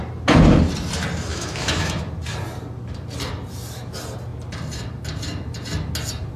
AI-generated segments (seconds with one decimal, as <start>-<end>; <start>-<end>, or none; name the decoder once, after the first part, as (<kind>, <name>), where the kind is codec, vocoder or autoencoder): 1.3-2.0 (autoencoder, DAC-VAE)